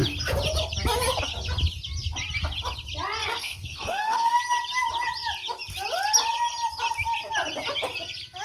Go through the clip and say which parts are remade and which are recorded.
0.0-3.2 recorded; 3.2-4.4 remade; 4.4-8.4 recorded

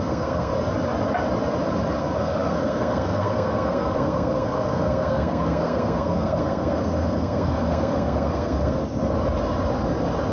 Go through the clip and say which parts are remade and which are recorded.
0.0-0.5 remade; 0.5-2.0 recorded; 2.0-8.8 remade; 8.8-10.3 recorded

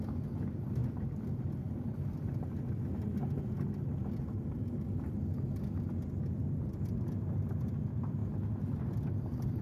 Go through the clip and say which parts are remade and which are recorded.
0.0-9.6 recorded

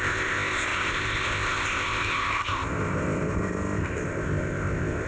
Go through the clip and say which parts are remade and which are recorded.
0.0-5.1 remade

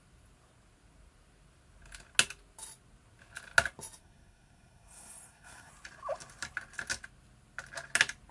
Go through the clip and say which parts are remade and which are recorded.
0.0-4.0 recorded; 4.0-5.7 remade; 5.7-8.3 recorded

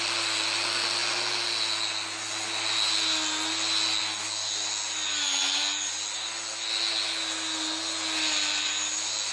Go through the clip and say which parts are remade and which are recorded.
0.0-9.3 recorded